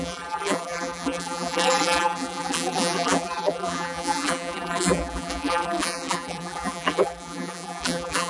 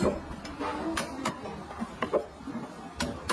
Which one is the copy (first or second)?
first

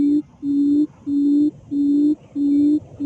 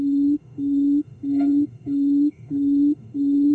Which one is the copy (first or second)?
second